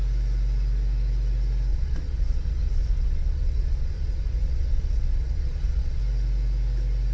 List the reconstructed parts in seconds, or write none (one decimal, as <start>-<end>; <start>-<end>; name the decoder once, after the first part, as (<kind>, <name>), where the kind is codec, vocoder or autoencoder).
1.7-6.0 (vocoder, Vocos)

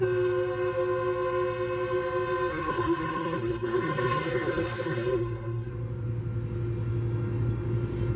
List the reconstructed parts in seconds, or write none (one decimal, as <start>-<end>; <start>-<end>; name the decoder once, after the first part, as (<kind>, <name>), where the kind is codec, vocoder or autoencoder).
2.5-5.7 (codec, SNAC)

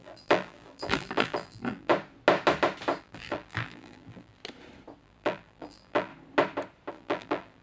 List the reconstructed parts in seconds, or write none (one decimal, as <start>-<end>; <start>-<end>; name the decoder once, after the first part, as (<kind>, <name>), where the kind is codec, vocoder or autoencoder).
0.0-1.9 (vocoder, BigVGAN v2); 3.0-4.4; 5.0-6.1; 6.9-7.6

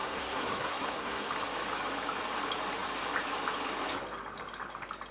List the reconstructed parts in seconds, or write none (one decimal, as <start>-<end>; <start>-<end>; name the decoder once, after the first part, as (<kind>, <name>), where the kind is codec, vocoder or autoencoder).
0.0-1.3 (codec, SNAC)

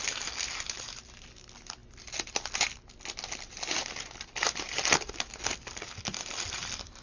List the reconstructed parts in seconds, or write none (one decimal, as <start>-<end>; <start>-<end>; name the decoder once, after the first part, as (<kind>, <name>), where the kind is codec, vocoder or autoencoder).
none

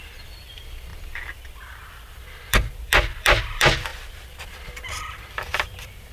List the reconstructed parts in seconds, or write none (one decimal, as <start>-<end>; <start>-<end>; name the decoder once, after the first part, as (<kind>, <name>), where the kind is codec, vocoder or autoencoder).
0.0-6.1 (vocoder, BigVGAN v2)

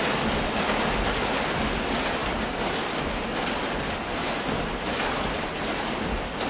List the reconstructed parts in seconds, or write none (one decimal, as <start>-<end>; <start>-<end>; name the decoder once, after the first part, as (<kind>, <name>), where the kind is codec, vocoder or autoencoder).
none

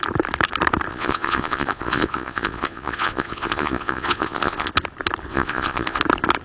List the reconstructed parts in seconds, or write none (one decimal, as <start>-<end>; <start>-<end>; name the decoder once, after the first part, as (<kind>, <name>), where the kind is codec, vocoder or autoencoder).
0.9-4.7 (vocoder, Vocos); 5.3-6.0